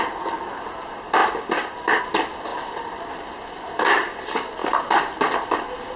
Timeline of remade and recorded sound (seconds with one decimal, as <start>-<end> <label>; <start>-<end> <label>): 0.0-4.6 recorded; 4.6-6.0 remade